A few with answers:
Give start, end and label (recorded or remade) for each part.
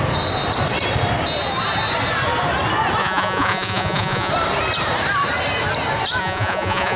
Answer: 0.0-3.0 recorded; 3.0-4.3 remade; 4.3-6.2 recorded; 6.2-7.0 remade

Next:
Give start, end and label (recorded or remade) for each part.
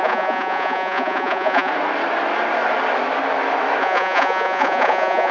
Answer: 0.0-1.7 remade; 1.7-3.8 recorded; 3.8-5.3 remade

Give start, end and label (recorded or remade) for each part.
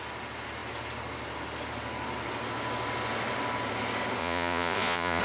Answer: 0.0-4.2 recorded; 4.2-5.2 remade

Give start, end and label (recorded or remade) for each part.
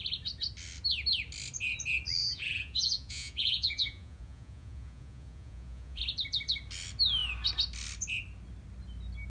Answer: 0.0-2.2 recorded; 2.2-6.0 remade; 6.0-9.3 recorded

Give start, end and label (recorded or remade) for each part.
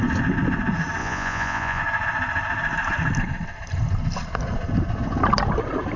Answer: 0.0-1.0 recorded; 1.0-1.8 remade; 1.8-6.0 recorded